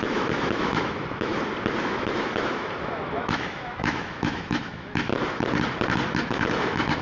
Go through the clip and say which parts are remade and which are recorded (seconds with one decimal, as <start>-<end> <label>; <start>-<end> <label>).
0.0-1.3 remade; 1.3-1.8 recorded; 1.8-5.1 remade; 5.1-6.1 recorded; 6.1-7.0 remade